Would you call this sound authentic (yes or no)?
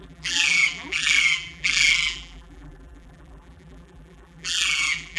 no